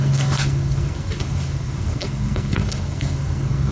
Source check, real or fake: fake